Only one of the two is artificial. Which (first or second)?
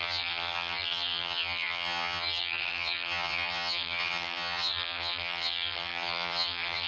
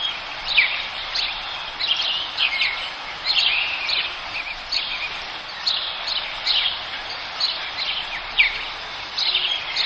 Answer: first